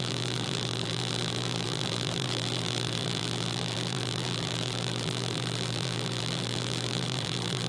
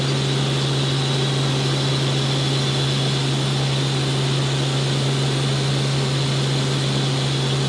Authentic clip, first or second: second